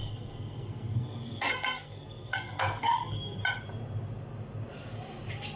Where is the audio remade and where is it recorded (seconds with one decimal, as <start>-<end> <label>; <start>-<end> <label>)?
0.0-3.4 remade; 3.4-5.6 recorded